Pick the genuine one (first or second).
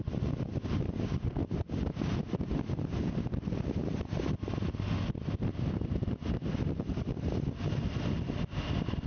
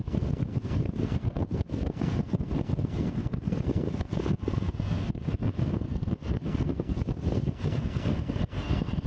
first